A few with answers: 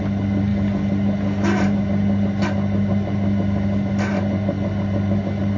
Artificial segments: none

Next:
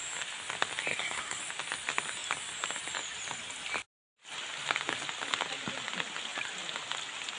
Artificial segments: 0.9-1.4 (codec, SNAC)

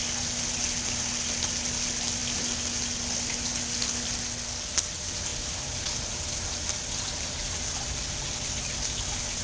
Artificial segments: none

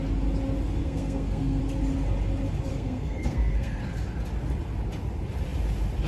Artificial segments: 0.8-1.6 (codec, SNAC); 2.7-3.8

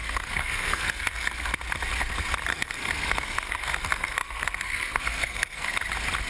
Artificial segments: 0.0-1.5 (codec, SNAC); 2.5-5.7

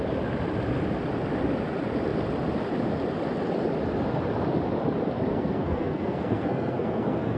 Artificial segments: 5.3-7.4 (codec, SNAC)